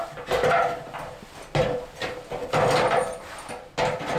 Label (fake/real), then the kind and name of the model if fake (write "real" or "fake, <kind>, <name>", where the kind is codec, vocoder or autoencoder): real